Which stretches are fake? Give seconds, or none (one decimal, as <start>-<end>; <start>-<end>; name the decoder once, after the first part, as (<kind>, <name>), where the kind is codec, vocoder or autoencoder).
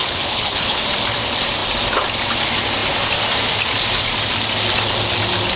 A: 0.0-0.8 (codec, HILCodec)